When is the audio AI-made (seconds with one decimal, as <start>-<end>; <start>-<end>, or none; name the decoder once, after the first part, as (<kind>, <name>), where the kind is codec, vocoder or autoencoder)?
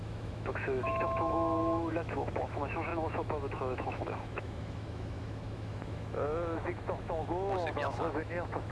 0.0-8.7 (autoencoder, DAC-VAE)